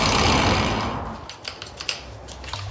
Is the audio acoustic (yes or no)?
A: yes